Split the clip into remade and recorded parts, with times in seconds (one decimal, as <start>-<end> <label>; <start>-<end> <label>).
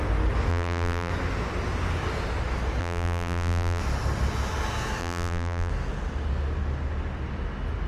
0.0-0.5 recorded; 0.5-1.1 remade; 1.1-2.8 recorded; 2.8-3.8 remade; 3.8-5.0 recorded; 5.0-5.7 remade; 5.7-7.9 recorded